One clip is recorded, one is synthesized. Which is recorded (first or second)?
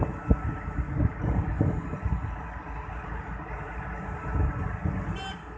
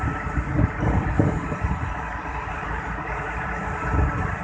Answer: first